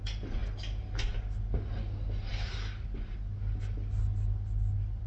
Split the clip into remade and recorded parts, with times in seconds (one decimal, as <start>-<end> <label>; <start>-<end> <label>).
0.0-5.1 recorded